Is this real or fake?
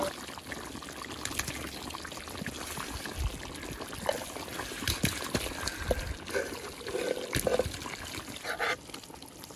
real